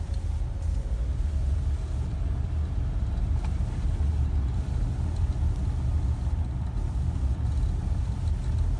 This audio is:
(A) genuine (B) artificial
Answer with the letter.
A